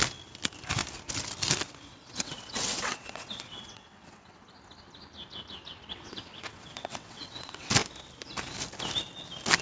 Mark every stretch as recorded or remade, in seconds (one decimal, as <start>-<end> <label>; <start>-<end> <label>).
0.0-1.9 recorded; 1.9-4.4 remade; 4.4-5.9 recorded; 5.9-7.7 remade; 7.7-9.6 recorded